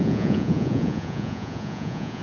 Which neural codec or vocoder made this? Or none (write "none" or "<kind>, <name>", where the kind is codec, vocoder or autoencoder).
vocoder, Vocos